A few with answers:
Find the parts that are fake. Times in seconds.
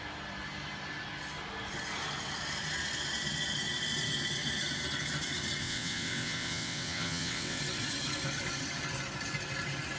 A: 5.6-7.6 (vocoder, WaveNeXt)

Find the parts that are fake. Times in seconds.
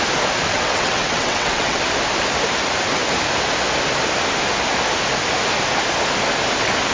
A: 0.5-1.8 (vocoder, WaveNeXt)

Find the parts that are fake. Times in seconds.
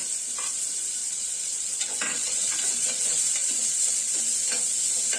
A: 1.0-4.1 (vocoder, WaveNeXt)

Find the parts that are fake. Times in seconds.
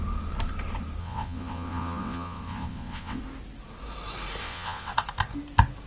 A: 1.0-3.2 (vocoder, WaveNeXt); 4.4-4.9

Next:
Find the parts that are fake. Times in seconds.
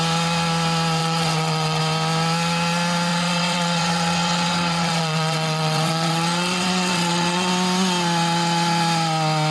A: 1.0-1.8 (vocoder, WaveNeXt); 3.1-7.5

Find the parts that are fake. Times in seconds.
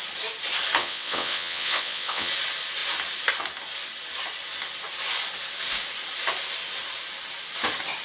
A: 0.8-2.3 (vocoder, WaveNeXt)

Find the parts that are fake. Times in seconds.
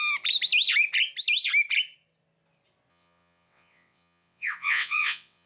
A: 2.9-5.5 (vocoder, WaveNeXt)